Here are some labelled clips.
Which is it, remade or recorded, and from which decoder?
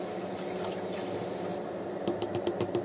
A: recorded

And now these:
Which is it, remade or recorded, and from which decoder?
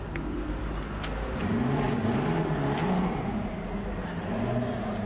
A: recorded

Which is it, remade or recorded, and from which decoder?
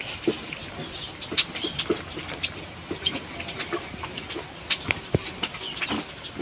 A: recorded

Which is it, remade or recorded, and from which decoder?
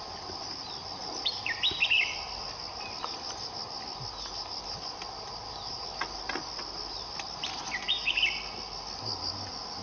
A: recorded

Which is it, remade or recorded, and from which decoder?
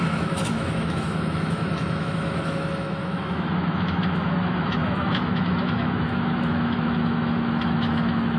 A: remade, autoencoder, DAC-VAE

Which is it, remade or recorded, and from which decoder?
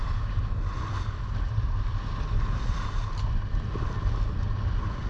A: recorded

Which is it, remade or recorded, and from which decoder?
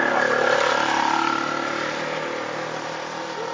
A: recorded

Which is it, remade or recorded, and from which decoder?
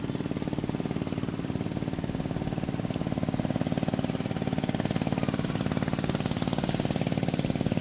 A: recorded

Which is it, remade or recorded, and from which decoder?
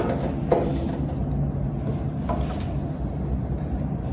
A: recorded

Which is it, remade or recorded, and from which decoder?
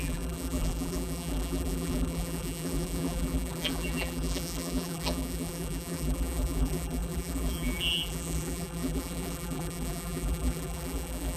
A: remade, vocoder, BigVGAN v2